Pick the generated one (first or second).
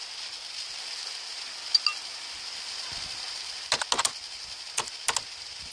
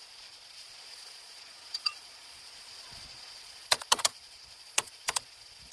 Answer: second